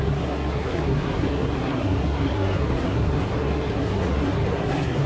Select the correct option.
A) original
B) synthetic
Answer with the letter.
B